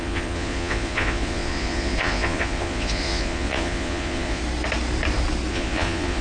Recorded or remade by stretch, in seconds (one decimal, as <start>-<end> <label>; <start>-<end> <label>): 0.0-4.4 remade; 4.4-5.5 recorded; 5.5-6.2 remade